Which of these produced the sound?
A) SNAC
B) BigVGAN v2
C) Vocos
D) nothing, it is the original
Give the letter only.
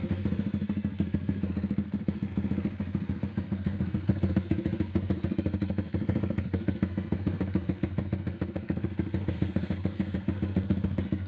A